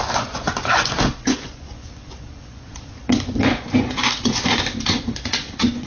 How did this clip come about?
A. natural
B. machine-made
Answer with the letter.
B